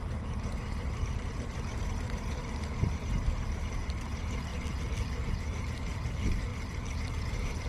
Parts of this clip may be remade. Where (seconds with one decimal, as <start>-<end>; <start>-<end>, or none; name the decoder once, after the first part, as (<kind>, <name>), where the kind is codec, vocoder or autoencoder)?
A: 0.0-4.5 (vocoder, BigVGAN v2); 5.3-6.5; 7.1-7.7